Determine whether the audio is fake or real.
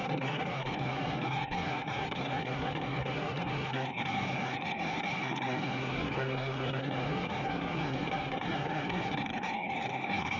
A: fake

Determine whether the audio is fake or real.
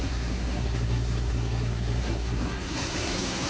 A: fake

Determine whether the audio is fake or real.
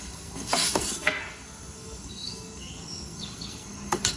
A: fake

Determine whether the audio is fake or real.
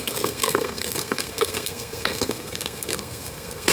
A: fake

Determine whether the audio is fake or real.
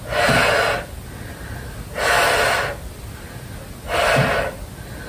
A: real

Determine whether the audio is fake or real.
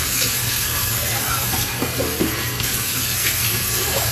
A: fake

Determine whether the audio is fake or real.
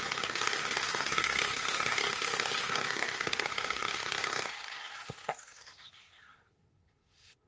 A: fake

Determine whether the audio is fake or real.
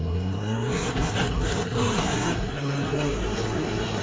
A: fake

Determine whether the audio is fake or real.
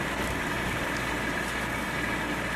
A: real